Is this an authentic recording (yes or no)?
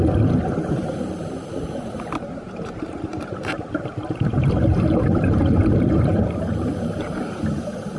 no